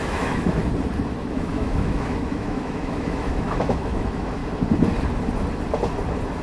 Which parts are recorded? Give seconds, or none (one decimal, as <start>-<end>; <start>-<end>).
0.6-1.3; 4.4-6.4